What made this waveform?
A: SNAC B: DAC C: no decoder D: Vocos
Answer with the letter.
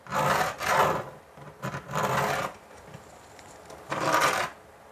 C